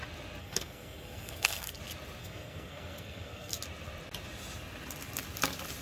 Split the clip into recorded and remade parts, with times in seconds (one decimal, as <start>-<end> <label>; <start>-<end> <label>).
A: 0.0-0.4 recorded; 0.4-1.8 remade; 1.8-2.2 recorded; 2.2-3.6 remade; 3.6-5.8 recorded